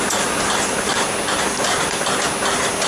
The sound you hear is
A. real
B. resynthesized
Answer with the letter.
A